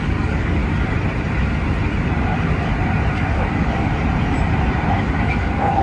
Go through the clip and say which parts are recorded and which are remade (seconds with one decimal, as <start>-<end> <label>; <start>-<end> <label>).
0.0-0.6 remade; 0.6-3.1 recorded; 3.1-3.9 remade; 3.9-5.0 recorded; 5.0-5.8 remade